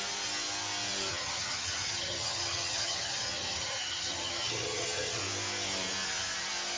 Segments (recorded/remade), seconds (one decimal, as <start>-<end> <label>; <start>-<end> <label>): 0.0-1.1 recorded; 1.1-5.2 remade; 5.2-6.8 recorded

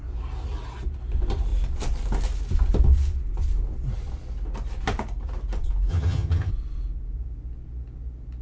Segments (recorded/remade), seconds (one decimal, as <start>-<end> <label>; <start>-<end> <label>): 0.0-5.9 recorded; 5.9-6.5 remade; 6.5-8.4 recorded

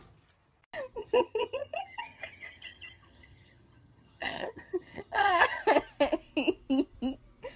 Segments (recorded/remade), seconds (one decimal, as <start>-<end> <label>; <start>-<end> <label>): 0.0-1.0 recorded; 1.0-5.6 remade; 5.6-7.6 recorded

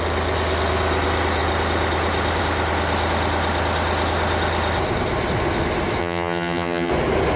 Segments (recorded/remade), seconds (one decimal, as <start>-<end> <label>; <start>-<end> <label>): 0.0-6.0 recorded; 6.0-6.9 remade; 6.9-7.4 recorded

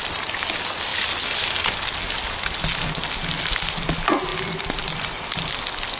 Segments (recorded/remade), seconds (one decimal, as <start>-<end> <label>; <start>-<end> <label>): 0.0-6.0 recorded

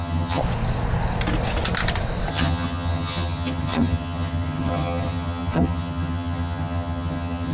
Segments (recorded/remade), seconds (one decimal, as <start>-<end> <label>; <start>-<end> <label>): 0.0-0.4 remade; 0.4-2.3 recorded; 2.3-7.5 remade

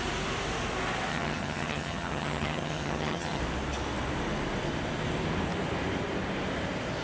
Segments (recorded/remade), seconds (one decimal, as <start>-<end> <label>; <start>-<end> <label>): 0.0-1.1 recorded; 1.1-3.4 remade; 3.4-7.0 recorded

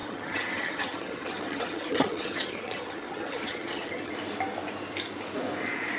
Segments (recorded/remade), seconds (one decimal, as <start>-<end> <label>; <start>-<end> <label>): 0.0-4.1 remade; 4.1-6.0 recorded